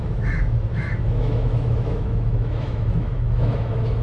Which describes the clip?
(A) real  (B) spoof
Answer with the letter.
B